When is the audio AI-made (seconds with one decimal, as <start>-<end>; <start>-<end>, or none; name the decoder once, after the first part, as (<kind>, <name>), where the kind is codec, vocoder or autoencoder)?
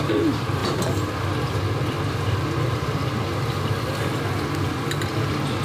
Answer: none